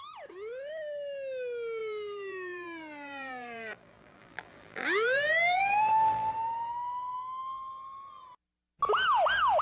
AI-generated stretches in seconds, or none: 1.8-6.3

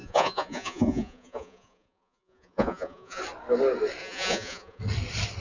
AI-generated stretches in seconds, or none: 0.0-3.2; 4.0-4.8

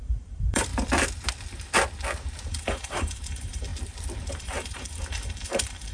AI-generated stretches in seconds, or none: 0.0-0.7; 2.5-3.7; 4.3-5.9

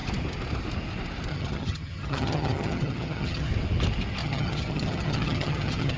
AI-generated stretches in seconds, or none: 1.3-3.5; 4.2-6.0